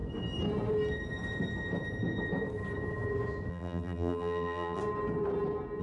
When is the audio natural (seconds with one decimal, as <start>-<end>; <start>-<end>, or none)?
0.0-3.5; 4.8-5.8